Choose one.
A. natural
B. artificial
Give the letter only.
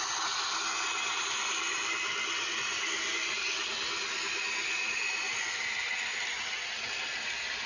A